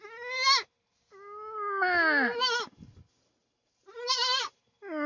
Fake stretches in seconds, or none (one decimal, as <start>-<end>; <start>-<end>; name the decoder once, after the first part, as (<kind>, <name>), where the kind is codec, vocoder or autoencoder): 3.4-4.6 (vocoder, BigVGAN v2)